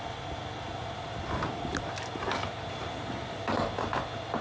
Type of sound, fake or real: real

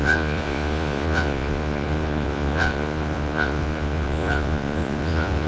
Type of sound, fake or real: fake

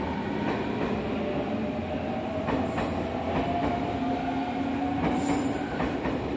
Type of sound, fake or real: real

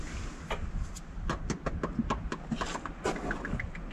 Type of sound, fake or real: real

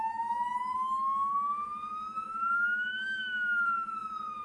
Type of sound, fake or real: fake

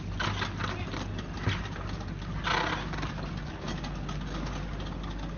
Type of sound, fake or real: real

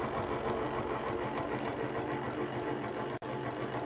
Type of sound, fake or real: real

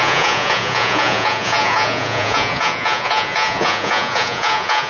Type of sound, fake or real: fake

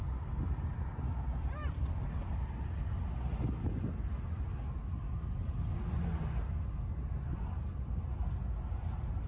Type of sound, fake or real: real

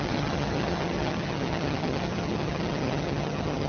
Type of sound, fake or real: fake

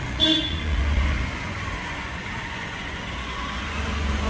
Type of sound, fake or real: fake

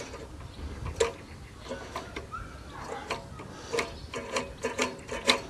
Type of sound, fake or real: real